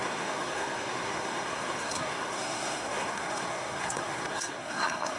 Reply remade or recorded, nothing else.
remade